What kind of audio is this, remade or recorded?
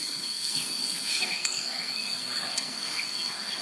remade